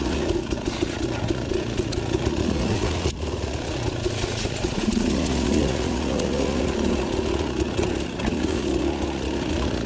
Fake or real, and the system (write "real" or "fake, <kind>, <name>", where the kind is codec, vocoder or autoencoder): fake, vocoder, Vocos